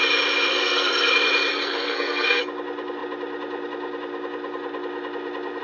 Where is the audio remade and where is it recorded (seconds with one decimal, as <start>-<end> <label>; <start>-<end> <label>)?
0.0-0.5 recorded; 0.5-1.1 remade; 1.1-1.5 recorded; 1.5-2.4 remade; 2.4-5.6 recorded